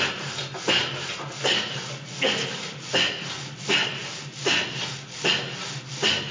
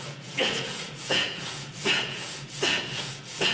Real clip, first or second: first